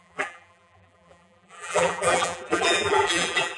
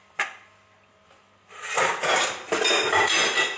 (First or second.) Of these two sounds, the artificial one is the first